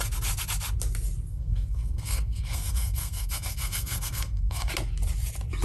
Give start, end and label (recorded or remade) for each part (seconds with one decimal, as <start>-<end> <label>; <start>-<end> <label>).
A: 0.0-1.3 recorded; 1.3-4.7 remade; 4.7-5.6 recorded